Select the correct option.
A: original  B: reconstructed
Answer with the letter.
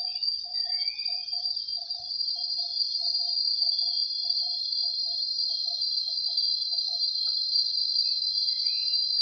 A